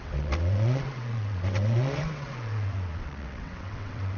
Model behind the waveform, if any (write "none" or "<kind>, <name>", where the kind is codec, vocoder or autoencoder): vocoder, WaveNeXt